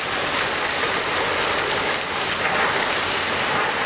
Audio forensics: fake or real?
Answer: real